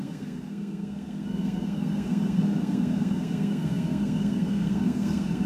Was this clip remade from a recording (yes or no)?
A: yes